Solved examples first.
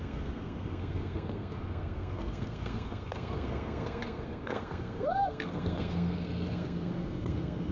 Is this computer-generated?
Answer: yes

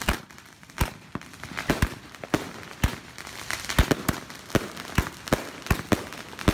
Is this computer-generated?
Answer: no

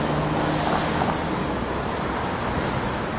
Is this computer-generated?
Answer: no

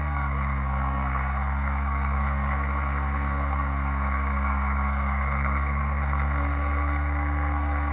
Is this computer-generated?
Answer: yes